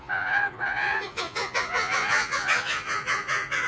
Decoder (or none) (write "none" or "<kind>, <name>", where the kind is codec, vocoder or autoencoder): vocoder, Vocos